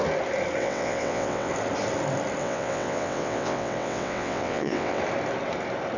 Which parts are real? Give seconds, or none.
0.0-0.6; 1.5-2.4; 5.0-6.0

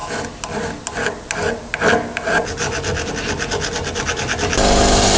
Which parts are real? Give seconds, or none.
0.0-5.2

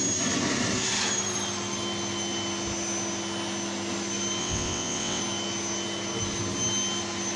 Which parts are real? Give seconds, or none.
0.0-4.4; 5.2-7.4

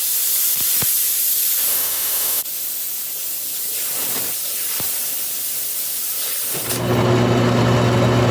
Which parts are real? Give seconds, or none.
0.0-1.7; 2.4-8.3

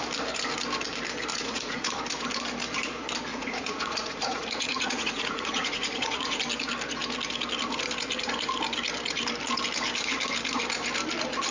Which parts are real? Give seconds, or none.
0.0-1.3; 2.0-3.3; 6.4-11.5

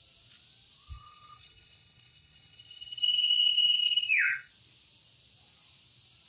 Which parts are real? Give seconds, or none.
0.0-0.9; 4.5-6.3

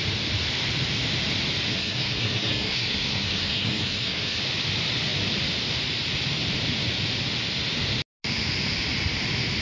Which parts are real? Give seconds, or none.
0.0-1.7; 4.4-9.6

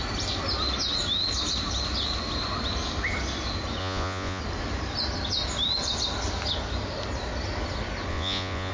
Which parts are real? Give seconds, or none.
0.0-3.8; 4.4-8.1